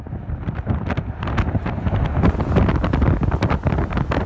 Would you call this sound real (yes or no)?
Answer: yes